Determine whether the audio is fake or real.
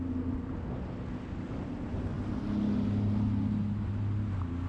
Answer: real